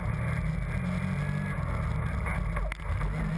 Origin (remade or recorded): recorded